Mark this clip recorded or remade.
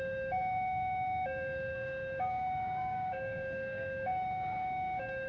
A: remade